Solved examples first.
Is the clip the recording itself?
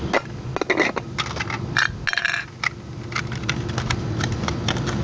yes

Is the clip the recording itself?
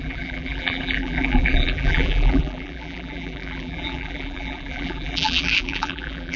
no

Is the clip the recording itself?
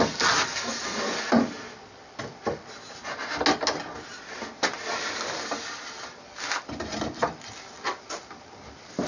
yes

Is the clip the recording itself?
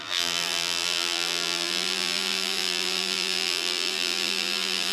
no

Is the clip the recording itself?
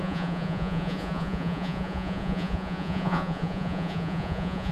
no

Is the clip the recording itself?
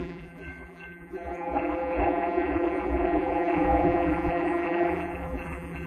no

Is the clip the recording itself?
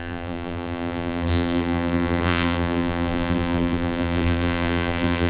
no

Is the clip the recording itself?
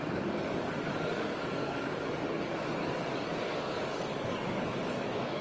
no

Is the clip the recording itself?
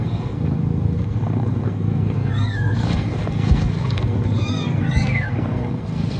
no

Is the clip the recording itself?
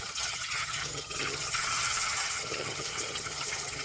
no